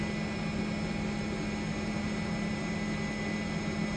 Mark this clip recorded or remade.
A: recorded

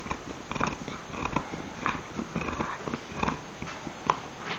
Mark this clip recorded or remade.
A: recorded